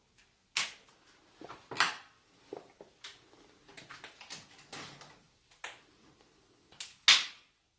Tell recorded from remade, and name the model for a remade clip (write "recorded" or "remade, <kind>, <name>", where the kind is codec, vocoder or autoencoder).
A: recorded